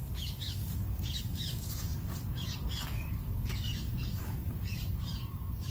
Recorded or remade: remade